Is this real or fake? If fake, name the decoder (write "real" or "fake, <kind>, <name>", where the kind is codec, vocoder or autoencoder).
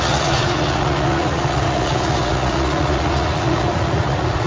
fake, vocoder, Vocos